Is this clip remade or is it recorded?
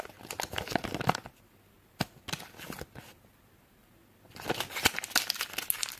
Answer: recorded